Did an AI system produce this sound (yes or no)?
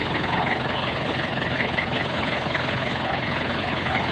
yes